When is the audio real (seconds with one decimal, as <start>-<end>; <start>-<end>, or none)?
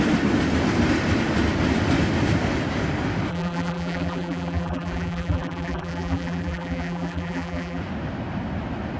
0.0-3.3; 7.8-9.0